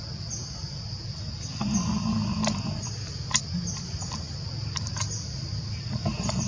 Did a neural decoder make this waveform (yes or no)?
no